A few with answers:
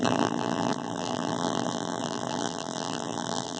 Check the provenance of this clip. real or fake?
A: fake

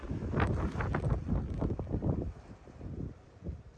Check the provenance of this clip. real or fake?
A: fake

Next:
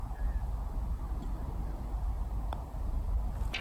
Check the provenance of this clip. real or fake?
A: real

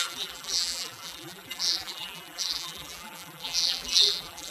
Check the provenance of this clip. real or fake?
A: fake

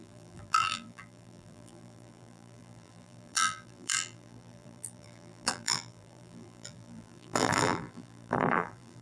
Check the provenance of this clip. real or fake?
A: fake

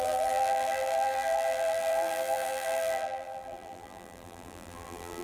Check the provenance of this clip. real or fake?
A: fake